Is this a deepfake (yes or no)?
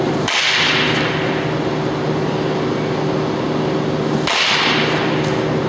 no